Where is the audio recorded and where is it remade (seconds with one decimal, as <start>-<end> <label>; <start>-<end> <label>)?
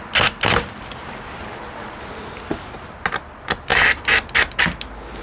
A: 0.0-5.2 recorded